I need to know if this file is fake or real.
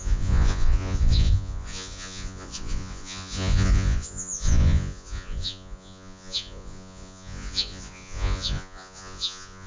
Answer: fake